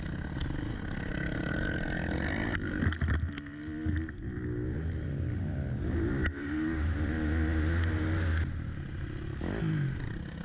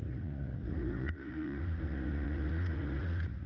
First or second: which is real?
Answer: first